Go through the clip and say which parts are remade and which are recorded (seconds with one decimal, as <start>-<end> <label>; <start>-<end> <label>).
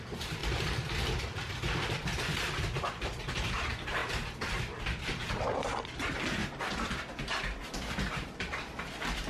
0.0-0.4 remade; 0.4-1.2 recorded; 1.2-4.0 remade; 4.0-5.0 recorded; 5.0-9.3 remade